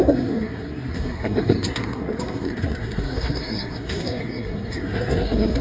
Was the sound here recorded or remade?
remade